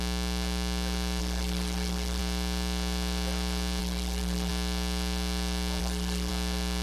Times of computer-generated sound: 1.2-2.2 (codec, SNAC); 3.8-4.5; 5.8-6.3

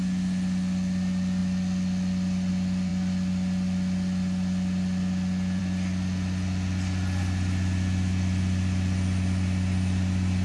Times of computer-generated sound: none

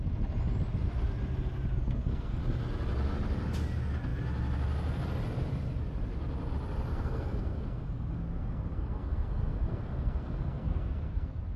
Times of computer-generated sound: 1.8-2.4 (codec, SNAC); 6.9-11.6